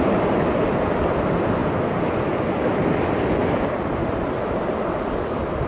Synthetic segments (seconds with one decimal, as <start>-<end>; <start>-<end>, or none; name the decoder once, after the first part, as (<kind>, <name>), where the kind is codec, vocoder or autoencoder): none